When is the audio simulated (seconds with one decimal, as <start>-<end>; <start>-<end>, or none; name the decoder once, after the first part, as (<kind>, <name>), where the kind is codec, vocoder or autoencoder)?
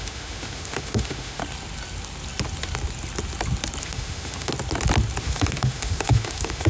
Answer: 0.0-1.4 (autoencoder, DAC-VAE); 3.8-4.5; 5.2-6.7